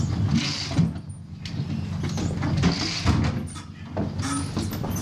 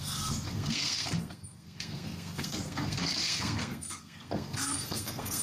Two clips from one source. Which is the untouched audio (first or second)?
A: first